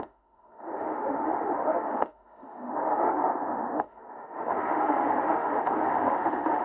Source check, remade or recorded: remade